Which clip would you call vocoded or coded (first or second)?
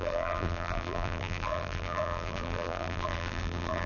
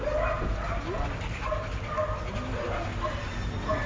first